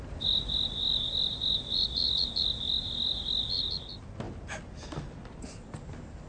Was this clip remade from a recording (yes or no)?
no